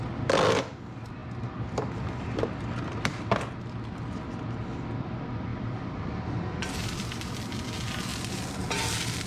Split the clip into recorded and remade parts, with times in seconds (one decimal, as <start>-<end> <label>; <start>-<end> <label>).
0.0-5.5 recorded; 5.5-7.2 remade; 7.2-9.3 recorded